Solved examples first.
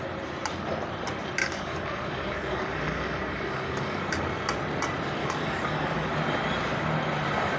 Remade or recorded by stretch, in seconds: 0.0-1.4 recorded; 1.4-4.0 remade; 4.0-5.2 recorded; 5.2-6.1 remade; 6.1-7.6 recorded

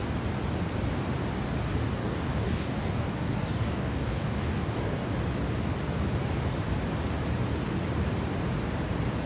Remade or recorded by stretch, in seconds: 0.0-2.0 recorded; 2.0-5.1 remade; 5.1-9.3 recorded